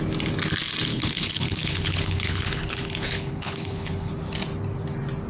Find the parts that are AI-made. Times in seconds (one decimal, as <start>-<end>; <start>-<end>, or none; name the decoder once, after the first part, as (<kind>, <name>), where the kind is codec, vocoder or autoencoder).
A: 0.9-4.1 (codec, HILCodec)